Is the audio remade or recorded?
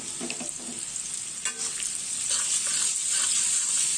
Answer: recorded